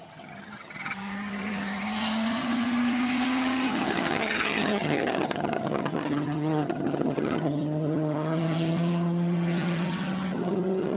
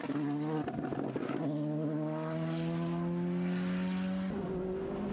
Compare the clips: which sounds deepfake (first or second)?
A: first